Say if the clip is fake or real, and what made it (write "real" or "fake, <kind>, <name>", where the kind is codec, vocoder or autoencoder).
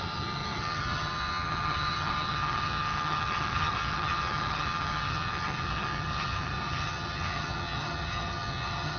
fake, vocoder, HiFi-GAN